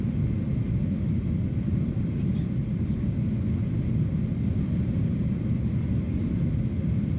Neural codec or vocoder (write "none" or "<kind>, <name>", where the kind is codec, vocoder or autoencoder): none